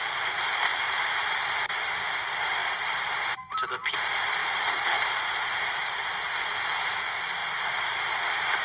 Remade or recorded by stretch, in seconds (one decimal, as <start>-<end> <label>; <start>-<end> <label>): 0.0-0.7 recorded; 0.7-1.5 remade; 1.5-4.4 recorded; 4.4-6.4 remade; 6.4-7.4 recorded; 7.4-8.2 remade; 8.2-8.6 recorded